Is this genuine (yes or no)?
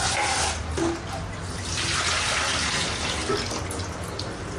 yes